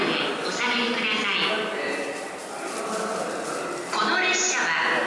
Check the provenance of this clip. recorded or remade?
recorded